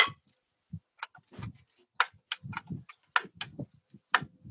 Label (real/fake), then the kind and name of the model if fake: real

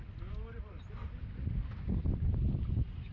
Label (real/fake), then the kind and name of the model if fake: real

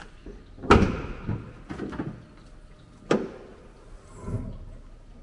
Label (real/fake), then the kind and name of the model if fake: real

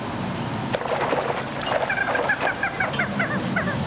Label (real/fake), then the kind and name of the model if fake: real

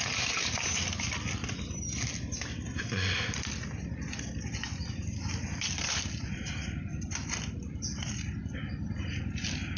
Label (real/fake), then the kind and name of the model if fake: real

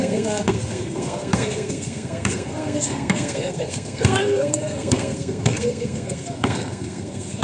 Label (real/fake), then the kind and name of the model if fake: fake, codec, SNAC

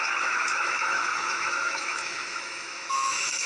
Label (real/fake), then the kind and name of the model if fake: fake, autoencoder, DAC-VAE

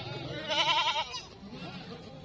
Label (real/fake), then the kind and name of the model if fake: real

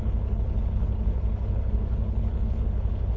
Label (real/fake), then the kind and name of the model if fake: fake, codec, HILCodec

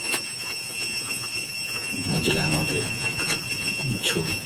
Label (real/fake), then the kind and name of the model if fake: fake, vocoder, Vocos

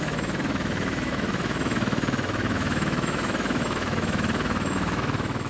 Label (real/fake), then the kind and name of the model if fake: fake, autoencoder, DAC-VAE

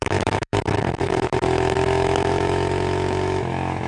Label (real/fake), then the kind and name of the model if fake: fake, autoencoder, DAC-VAE